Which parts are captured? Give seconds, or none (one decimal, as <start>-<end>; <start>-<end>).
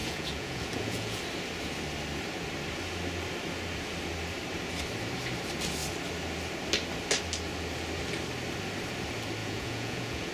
1.2-9.4